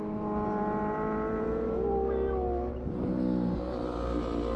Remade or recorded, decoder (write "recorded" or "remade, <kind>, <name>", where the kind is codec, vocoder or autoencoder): recorded